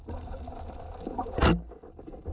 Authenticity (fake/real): real